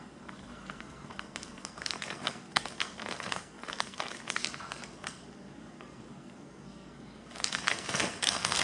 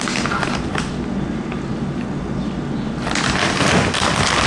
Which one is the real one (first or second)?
second